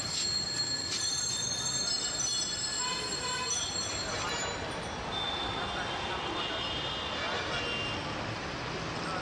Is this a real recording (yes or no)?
yes